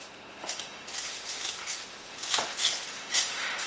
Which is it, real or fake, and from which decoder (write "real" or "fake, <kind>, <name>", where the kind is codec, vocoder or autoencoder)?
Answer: fake, autoencoder, DAC-VAE